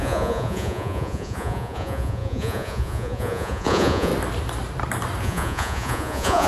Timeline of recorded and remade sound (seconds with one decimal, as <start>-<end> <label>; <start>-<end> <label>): 0.0-4.1 remade; 4.1-5.2 recorded; 5.2-6.5 remade